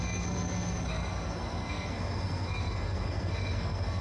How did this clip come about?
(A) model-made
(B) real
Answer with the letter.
A